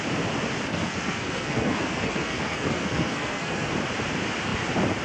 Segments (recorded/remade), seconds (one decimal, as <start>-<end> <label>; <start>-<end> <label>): 0.0-0.7 recorded; 0.7-3.7 remade; 3.7-5.0 recorded